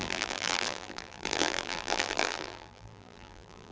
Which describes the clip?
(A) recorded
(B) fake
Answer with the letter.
B